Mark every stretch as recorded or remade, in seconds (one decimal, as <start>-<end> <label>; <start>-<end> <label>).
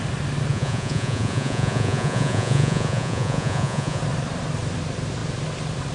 0.0-0.5 recorded; 0.5-4.0 remade; 4.0-5.9 recorded